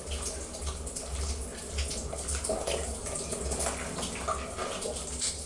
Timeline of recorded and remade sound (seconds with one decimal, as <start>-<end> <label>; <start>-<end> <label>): 0.0-5.5 recorded